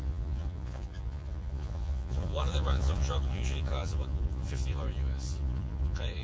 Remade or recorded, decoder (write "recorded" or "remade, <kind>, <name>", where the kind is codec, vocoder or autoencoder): remade, vocoder, Vocos